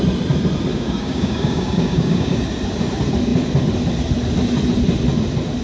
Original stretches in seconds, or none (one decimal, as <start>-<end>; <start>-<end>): 0.0-0.7; 2.4-5.6